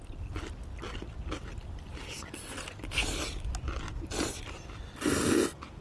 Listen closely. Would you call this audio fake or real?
real